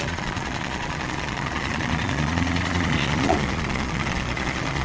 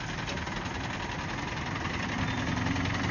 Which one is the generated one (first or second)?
first